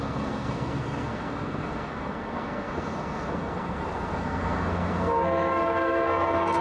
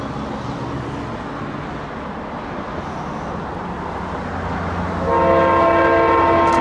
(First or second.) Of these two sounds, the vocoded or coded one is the first